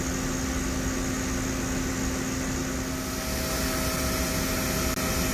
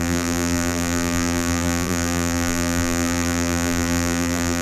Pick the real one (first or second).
first